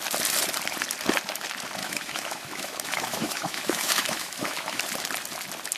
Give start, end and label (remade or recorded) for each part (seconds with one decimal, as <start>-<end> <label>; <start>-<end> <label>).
0.0-1.8 recorded; 1.8-4.8 remade; 4.8-5.8 recorded